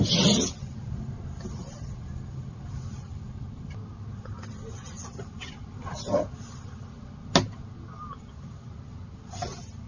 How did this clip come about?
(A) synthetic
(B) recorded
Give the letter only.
B